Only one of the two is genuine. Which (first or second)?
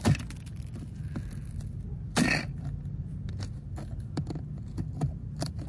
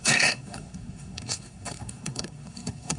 first